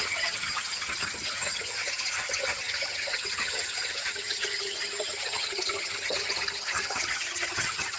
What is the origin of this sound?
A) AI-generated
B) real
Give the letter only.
A